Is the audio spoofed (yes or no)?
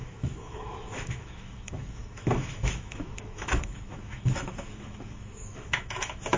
yes